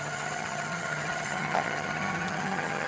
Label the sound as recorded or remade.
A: remade